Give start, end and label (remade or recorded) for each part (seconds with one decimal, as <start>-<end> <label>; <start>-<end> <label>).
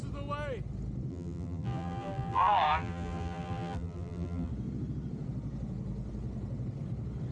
0.0-1.1 recorded; 1.1-4.5 remade; 4.5-7.3 recorded